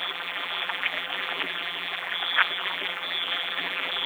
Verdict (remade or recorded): remade